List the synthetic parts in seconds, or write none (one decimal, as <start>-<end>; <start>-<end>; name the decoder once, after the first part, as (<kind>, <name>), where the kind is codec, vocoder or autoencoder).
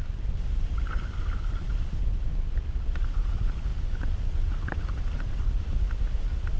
none